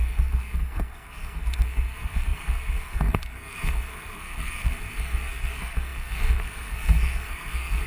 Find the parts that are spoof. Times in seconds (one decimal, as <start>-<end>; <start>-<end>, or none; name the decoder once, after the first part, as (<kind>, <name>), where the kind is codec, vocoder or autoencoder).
0.0-7.9 (codec, SNAC)

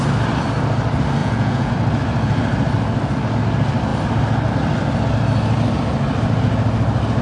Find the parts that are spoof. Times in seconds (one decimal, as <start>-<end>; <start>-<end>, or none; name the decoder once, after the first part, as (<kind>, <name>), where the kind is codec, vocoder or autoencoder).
1.2-1.7 (vocoder, Vocos)

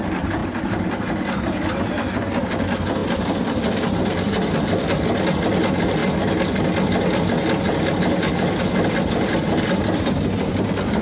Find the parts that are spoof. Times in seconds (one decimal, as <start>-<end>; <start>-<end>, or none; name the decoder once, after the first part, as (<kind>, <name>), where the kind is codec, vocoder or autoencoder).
none

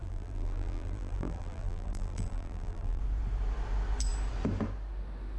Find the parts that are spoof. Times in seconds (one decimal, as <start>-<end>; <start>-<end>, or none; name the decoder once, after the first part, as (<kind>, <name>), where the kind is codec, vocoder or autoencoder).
0.0-3.0 (vocoder, BigVGAN v2)

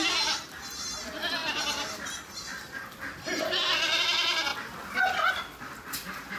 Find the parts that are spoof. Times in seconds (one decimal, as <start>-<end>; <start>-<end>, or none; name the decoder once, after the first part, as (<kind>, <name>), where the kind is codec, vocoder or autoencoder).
none

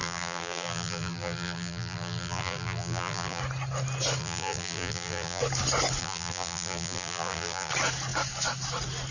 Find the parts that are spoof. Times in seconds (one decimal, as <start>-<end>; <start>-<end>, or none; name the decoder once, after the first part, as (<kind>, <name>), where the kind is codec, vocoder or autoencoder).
0.0-3.4 (vocoder, BigVGAN v2); 4.2-5.4; 6.0-7.7

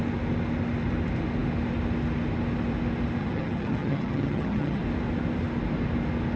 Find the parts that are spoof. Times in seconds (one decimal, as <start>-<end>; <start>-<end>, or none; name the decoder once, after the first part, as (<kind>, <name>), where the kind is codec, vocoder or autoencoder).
3.2-4.8 (vocoder, HiFi-GAN)